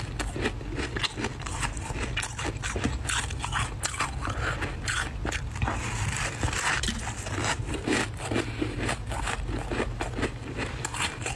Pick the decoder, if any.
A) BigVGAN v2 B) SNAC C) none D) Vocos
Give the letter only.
C